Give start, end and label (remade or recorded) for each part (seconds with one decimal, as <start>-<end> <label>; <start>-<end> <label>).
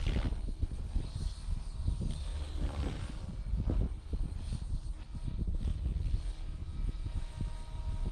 0.0-6.6 recorded; 6.6-7.3 remade; 7.3-8.1 recorded